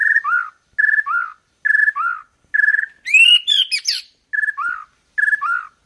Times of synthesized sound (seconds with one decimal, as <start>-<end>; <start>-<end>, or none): none